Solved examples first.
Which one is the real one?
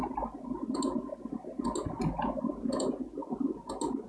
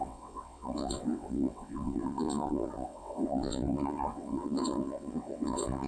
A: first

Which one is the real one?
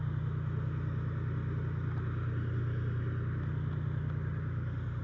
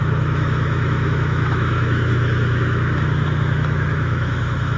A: first